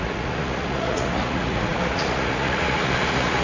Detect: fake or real fake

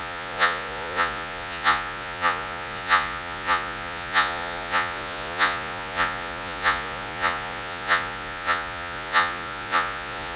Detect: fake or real fake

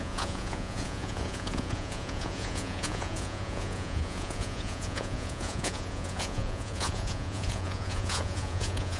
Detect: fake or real fake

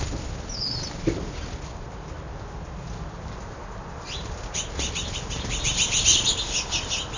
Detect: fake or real real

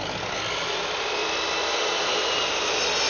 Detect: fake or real real